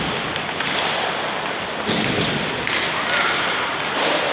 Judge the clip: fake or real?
real